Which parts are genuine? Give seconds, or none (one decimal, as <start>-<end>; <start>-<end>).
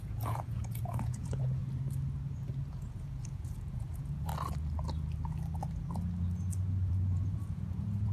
1.6-2.7; 4.3-6.9